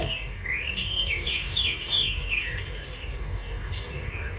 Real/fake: fake